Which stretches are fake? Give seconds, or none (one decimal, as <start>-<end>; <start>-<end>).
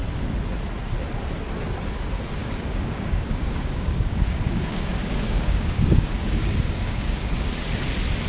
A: 2.4-7.2